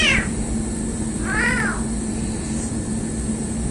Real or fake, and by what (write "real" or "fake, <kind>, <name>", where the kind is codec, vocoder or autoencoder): real